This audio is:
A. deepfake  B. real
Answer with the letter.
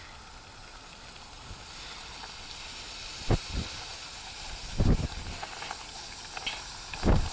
B